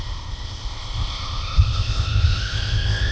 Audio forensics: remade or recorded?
remade